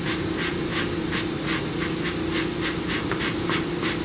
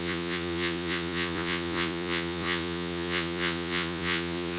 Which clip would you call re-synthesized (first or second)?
second